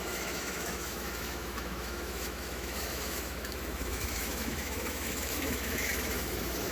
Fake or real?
fake